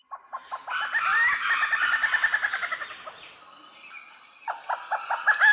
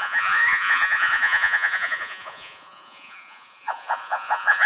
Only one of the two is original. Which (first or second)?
first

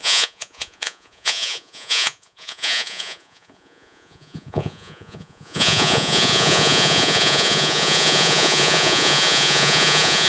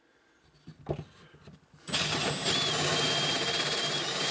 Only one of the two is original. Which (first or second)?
second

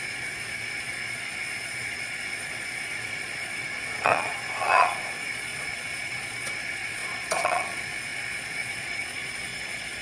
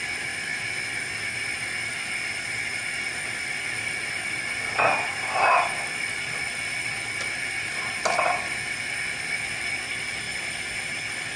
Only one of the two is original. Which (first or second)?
second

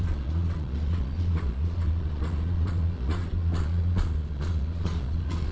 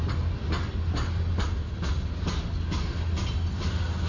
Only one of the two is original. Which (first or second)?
second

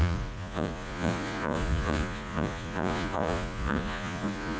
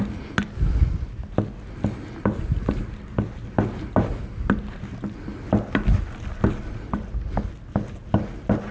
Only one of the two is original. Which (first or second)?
second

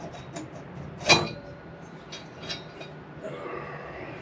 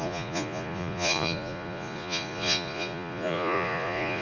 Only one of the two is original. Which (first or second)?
first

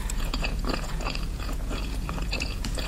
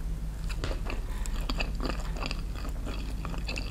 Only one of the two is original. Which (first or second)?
second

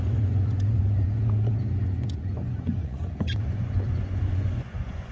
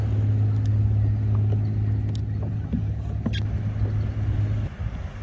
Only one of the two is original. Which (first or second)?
second